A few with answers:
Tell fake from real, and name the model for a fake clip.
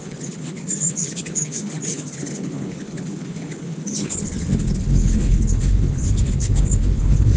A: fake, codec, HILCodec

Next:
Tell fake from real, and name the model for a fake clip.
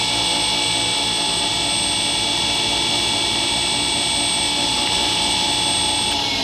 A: real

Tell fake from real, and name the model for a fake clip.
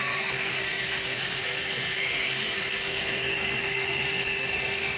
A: fake, codec, SNAC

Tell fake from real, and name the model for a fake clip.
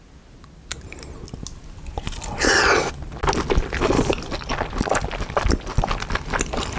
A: real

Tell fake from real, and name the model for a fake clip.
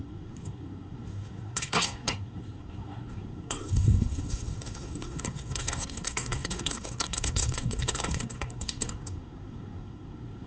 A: fake, codec, SNAC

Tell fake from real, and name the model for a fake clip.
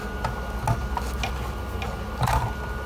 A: real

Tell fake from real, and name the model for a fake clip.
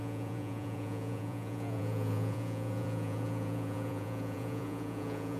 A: fake, vocoder, Vocos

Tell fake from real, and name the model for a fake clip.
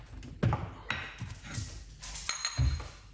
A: real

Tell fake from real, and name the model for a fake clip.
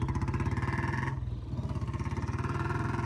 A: real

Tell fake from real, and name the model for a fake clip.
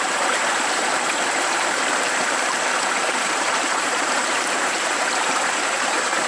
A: fake, vocoder, BigVGAN v2